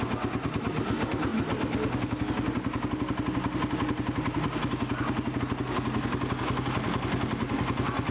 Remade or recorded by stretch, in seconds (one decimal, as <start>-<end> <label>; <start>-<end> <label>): 0.0-8.1 recorded